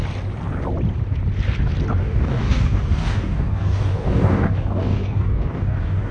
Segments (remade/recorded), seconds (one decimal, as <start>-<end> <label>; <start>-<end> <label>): 0.0-2.0 recorded; 2.0-6.1 remade